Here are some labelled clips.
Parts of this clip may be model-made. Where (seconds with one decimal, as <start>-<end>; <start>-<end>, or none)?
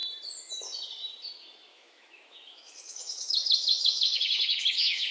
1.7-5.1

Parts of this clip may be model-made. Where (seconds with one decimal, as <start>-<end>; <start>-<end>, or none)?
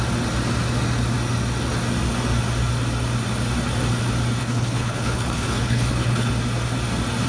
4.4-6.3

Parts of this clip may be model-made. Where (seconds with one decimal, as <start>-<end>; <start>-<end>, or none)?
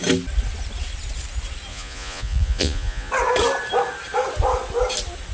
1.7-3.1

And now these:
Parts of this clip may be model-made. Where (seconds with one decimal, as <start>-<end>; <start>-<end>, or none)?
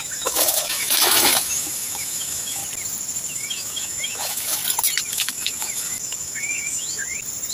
0.0-2.6; 3.3-4.6; 5.1-7.0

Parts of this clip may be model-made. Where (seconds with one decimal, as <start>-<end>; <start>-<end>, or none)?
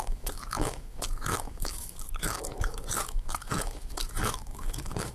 0.0-5.1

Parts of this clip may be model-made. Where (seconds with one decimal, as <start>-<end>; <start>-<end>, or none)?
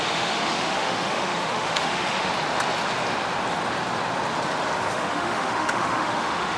0.0-2.3; 4.9-6.6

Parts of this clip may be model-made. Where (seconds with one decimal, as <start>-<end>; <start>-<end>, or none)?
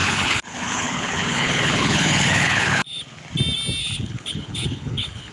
0.0-3.2; 3.8-5.3